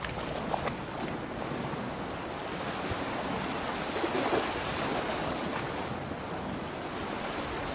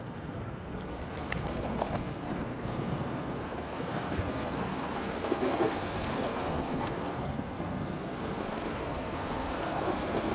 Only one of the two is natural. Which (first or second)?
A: first